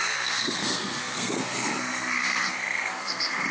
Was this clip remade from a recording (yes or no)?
yes